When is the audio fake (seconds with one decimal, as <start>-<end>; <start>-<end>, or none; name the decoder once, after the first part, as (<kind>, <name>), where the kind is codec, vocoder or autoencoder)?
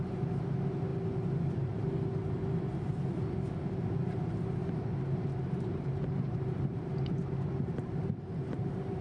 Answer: 4.6-6.9 (vocoder, BigVGAN v2)